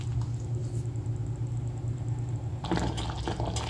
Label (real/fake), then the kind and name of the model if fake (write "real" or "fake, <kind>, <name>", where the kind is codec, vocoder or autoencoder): real